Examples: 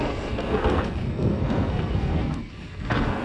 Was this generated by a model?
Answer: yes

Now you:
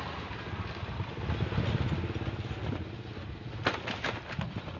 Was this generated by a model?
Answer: no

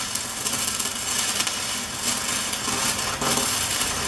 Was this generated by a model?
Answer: no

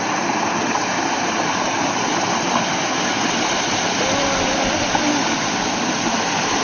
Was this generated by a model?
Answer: no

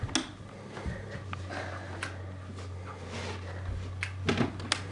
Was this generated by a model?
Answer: no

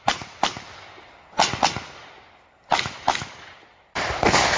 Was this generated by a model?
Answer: no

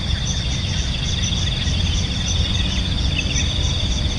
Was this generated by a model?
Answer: no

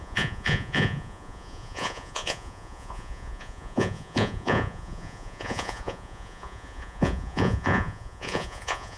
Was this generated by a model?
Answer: yes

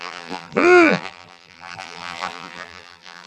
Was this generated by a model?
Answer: yes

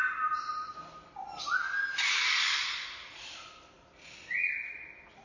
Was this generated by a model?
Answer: no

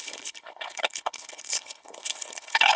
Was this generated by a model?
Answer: yes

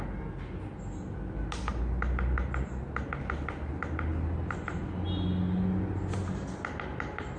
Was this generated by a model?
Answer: no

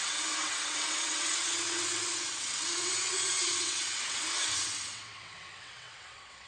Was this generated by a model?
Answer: yes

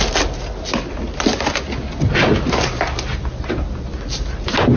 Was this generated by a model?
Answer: no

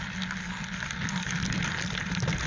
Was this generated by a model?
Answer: no